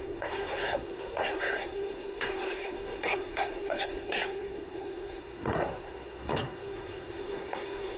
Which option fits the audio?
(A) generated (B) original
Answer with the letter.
A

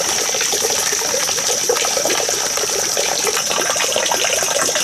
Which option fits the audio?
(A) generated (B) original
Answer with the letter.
B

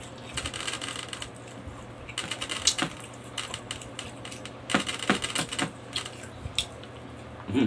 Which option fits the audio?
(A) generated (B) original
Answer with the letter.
B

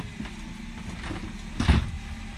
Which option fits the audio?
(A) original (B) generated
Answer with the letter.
A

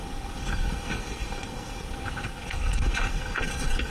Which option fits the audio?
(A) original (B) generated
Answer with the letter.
B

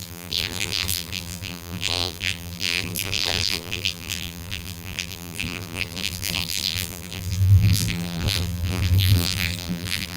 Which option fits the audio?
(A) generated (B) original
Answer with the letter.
A